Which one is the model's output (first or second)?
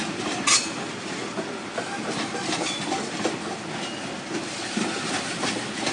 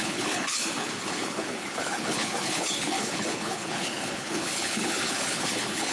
second